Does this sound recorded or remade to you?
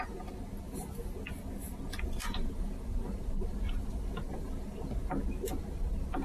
recorded